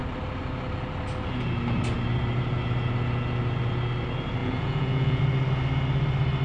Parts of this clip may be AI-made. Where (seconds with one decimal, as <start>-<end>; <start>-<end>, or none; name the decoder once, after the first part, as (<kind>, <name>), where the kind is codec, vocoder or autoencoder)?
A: 4.4-5.2 (vocoder, Vocos)